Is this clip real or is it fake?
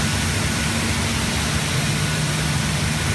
real